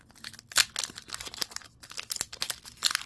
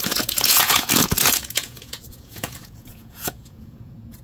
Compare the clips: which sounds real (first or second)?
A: first